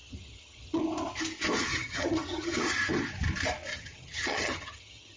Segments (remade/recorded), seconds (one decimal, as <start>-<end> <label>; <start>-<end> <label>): 0.0-0.8 remade; 0.8-1.7 recorded; 1.7-2.6 remade; 2.6-3.7 recorded; 3.7-5.2 remade